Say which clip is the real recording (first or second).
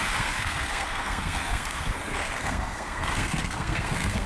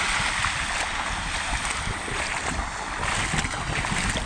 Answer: second